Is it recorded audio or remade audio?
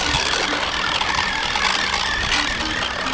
recorded